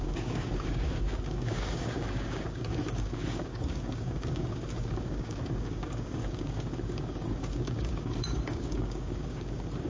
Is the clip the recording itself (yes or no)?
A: no